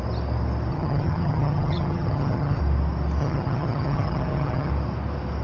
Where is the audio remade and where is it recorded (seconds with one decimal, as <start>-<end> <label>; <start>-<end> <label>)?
0.0-0.7 recorded; 0.7-2.6 remade; 2.6-3.2 recorded; 3.2-4.7 remade; 4.7-5.4 recorded